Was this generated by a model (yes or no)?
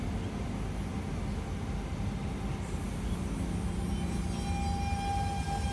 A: no